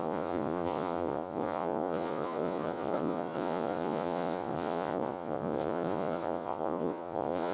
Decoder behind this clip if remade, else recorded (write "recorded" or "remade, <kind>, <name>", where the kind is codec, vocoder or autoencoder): remade, vocoder, Vocos